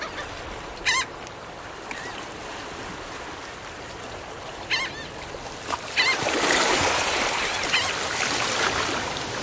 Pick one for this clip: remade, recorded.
recorded